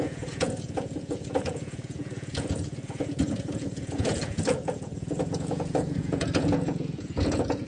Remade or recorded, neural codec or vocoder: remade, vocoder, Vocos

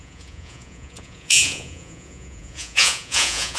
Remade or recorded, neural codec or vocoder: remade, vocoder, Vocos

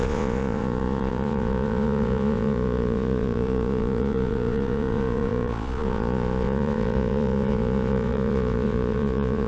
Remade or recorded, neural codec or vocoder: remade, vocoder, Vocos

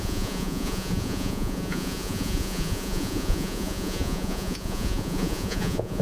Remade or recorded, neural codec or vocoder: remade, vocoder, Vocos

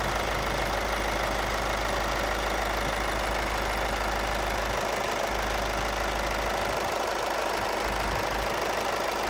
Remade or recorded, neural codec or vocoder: recorded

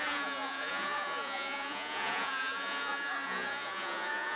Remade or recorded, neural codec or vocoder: remade, vocoder, Vocos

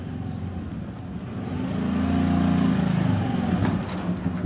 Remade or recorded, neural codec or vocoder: recorded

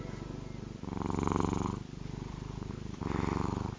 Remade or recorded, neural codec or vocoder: recorded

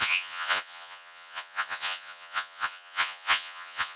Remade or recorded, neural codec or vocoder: remade, vocoder, Vocos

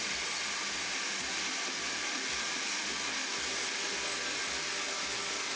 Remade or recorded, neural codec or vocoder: recorded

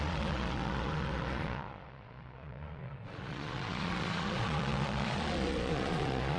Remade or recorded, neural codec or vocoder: remade, vocoder, Vocos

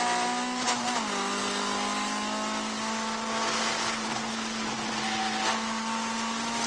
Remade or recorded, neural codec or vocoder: recorded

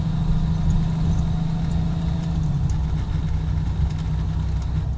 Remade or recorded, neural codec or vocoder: recorded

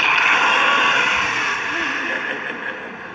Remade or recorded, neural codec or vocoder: recorded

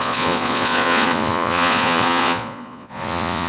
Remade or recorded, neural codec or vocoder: remade, vocoder, Vocos